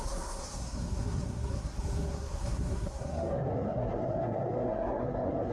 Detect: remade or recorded remade